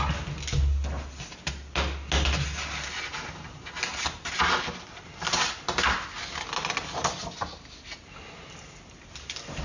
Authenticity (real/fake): real